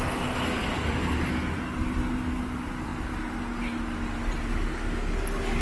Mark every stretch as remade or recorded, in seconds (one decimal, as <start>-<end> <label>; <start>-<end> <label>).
0.0-5.6 recorded